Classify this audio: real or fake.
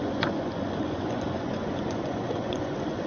fake